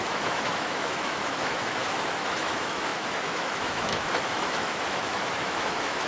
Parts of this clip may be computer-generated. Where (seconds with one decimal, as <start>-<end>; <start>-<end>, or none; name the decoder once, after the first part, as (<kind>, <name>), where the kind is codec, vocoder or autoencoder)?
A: 0.0-6.1 (autoencoder, DAC-VAE)